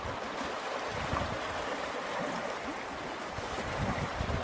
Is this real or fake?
real